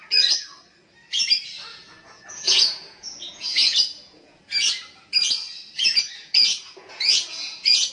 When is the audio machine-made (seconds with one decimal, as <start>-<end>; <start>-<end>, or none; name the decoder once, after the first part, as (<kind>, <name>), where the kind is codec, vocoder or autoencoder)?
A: 1.7-4.4 (vocoder, Vocos); 6.2-7.9